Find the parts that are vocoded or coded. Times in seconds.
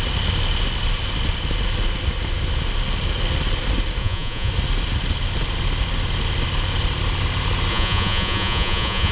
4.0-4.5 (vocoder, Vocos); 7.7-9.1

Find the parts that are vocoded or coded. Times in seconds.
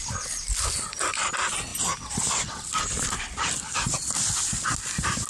none